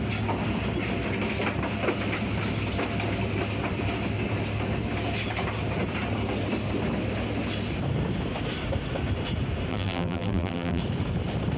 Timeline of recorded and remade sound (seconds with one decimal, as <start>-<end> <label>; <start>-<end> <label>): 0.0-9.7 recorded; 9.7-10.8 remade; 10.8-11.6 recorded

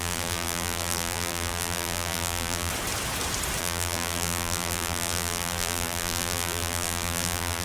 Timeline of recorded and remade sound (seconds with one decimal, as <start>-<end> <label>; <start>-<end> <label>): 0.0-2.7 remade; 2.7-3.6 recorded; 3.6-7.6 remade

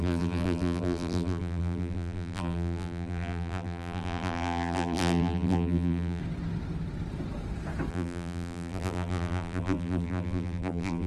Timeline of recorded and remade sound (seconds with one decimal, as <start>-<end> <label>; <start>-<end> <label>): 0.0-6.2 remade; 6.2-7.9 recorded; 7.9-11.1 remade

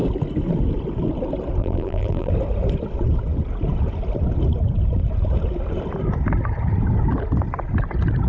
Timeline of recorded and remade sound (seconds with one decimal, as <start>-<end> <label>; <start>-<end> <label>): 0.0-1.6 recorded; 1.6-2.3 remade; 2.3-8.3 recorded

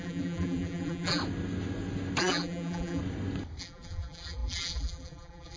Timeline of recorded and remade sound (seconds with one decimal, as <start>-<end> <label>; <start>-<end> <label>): 0.0-1.2 remade; 1.2-2.2 recorded; 2.2-3.0 remade; 3.0-3.6 recorded; 3.6-5.6 remade

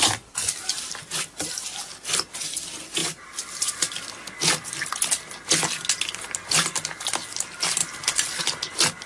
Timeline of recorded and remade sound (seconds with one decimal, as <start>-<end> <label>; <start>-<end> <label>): 0.0-1.0 recorded; 1.0-1.5 remade; 1.5-3.0 recorded; 3.0-3.6 remade; 3.6-7.8 recorded; 7.8-8.4 remade; 8.4-9.1 recorded

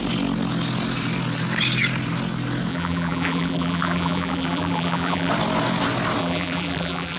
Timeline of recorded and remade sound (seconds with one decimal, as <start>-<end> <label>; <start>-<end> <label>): 0.0-2.7 recorded; 2.7-5.3 remade; 5.3-6.2 recorded; 6.2-7.2 remade